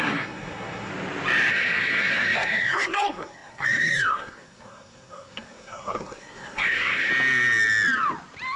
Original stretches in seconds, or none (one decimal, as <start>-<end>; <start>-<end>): 0.9-1.5; 7.1-8.6